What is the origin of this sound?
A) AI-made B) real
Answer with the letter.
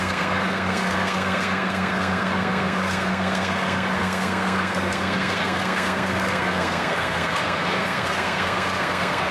A